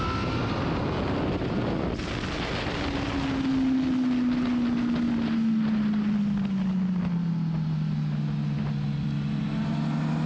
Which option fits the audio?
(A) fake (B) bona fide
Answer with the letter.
B